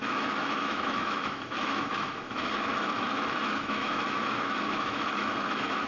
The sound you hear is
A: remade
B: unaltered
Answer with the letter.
A